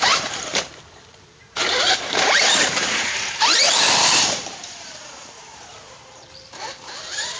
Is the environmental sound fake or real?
fake